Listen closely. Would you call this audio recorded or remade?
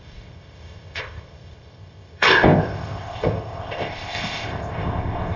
remade